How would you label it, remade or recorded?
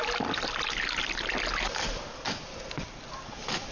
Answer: recorded